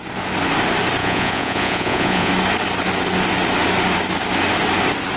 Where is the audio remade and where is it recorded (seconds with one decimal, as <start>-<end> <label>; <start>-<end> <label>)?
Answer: 0.0-1.0 recorded; 1.0-2.3 remade; 2.3-5.2 recorded